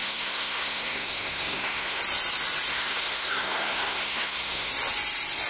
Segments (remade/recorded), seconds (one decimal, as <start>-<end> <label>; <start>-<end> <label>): 0.0-2.0 remade; 2.0-2.7 recorded; 2.7-4.7 remade; 4.7-5.5 recorded